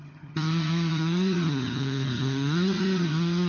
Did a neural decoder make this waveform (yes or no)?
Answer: yes